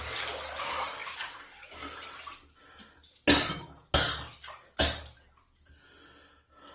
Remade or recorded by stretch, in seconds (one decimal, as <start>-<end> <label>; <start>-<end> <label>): 0.0-6.7 recorded

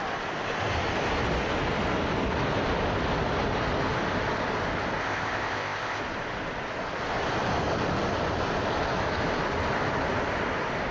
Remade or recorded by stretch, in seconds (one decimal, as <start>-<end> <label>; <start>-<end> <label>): 0.0-5.0 recorded; 5.0-6.0 remade; 6.0-10.9 recorded

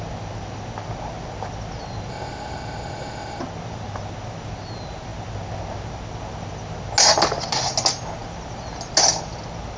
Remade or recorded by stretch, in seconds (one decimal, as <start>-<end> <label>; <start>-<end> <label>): 0.0-2.1 recorded; 2.1-3.4 remade; 3.4-9.8 recorded

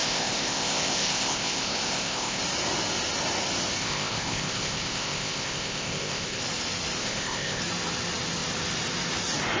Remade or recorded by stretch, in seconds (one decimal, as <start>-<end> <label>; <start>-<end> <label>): 0.0-2.4 remade; 2.4-3.8 recorded; 3.8-6.4 remade; 6.4-7.0 recorded; 7.0-7.6 remade; 7.6-9.6 recorded

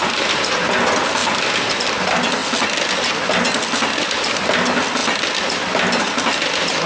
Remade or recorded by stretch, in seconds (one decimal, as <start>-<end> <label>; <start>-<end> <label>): 0.0-6.9 recorded

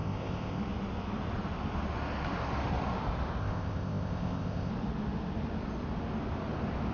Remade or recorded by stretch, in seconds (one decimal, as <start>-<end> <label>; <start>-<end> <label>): 0.0-0.6 remade; 0.6-3.4 recorded; 3.4-4.7 remade; 4.7-6.9 recorded

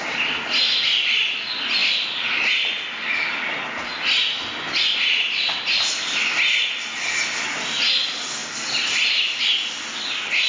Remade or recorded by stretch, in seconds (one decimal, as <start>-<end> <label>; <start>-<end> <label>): 0.0-10.5 recorded